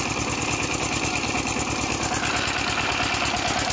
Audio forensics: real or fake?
real